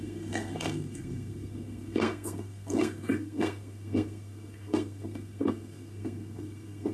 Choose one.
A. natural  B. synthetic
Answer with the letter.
B